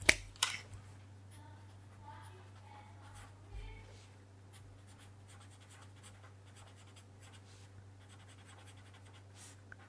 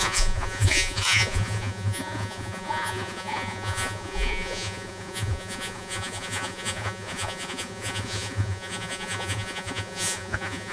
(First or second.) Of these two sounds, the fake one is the second